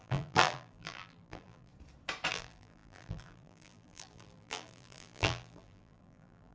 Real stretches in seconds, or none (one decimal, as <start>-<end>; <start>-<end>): 1.7-2.3